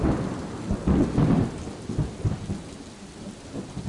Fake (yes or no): no